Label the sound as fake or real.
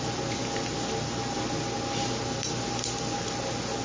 real